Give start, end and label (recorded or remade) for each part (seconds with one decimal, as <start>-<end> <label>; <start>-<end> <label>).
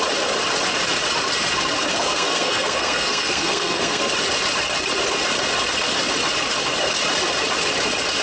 0.0-1.9 recorded; 1.9-4.1 remade; 4.1-8.2 recorded